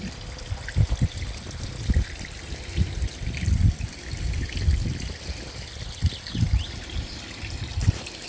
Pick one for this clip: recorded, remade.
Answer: recorded